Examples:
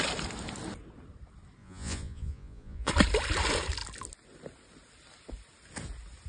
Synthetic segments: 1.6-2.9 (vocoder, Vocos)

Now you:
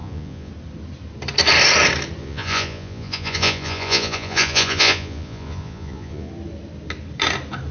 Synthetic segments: 0.0-0.5 (vocoder, Vocos); 2.2-6.3